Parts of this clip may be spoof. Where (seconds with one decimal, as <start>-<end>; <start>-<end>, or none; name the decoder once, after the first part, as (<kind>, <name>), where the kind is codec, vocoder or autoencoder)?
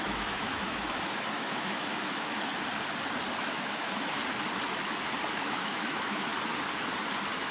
0.0-2.5 (autoencoder, DAC-VAE); 3.4-4.2; 5.3-6.3